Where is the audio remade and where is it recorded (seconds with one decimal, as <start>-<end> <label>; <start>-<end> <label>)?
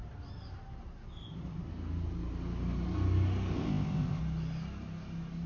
0.0-3.5 recorded; 3.5-4.2 remade; 4.2-5.5 recorded